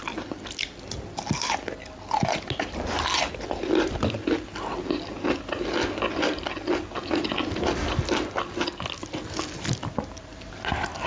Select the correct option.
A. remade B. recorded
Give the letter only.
B